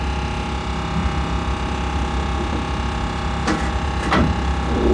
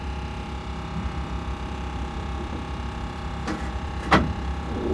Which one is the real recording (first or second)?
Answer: first